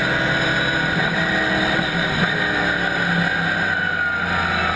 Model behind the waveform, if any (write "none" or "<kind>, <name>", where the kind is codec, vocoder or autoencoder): none